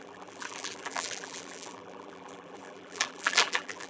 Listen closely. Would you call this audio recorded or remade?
remade